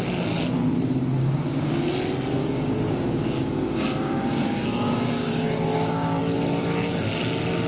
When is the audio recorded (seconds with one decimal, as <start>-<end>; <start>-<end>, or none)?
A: 0.0-1.2; 1.9-2.4; 6.2-7.7